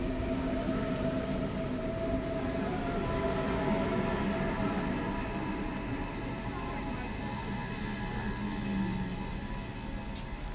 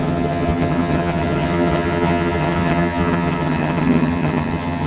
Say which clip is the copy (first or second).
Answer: second